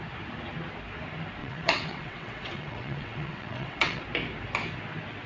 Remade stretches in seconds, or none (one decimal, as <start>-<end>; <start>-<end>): 1.4-4.0